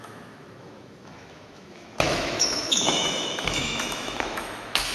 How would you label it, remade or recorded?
remade